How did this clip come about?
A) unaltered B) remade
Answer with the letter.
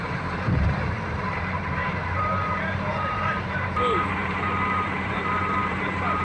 B